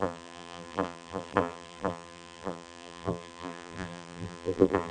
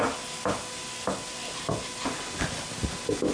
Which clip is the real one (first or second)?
second